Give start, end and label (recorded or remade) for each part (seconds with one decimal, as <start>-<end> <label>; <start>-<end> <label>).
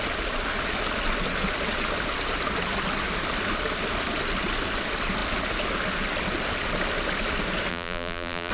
0.0-7.7 recorded; 7.7-8.5 remade